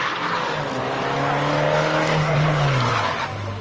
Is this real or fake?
real